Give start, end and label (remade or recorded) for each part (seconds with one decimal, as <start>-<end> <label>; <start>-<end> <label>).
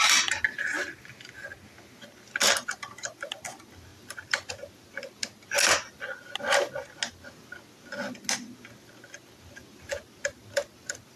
0.0-3.9 recorded; 3.9-4.5 remade; 4.5-11.2 recorded